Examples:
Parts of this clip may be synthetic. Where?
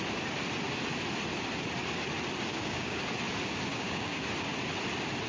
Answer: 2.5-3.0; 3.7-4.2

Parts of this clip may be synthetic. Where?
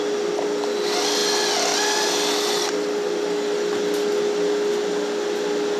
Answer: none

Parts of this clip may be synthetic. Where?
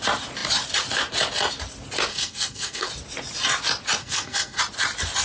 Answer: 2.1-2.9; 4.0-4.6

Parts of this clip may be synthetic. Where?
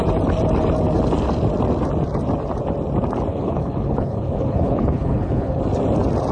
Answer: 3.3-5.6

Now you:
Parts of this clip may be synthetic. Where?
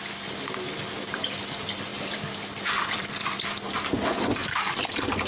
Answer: 1.9-3.7; 4.4-5.3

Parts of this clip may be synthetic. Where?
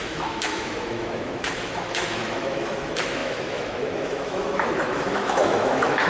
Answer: 0.0-6.1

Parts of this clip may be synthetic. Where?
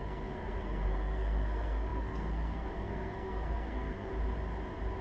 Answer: 0.0-4.1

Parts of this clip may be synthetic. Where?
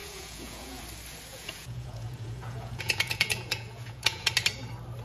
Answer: 0.0-0.8; 1.3-4.3